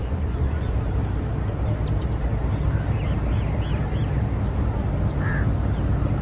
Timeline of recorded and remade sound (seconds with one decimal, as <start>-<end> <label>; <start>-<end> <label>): 0.0-0.7 remade; 0.7-6.2 recorded